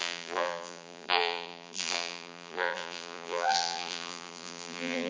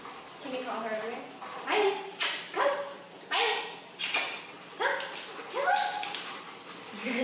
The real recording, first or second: second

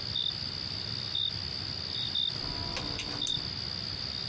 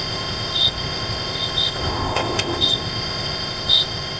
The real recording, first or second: first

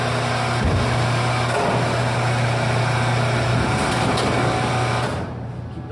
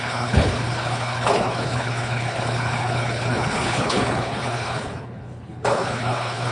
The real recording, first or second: first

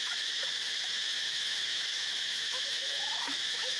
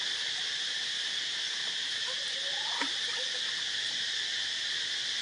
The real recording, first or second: second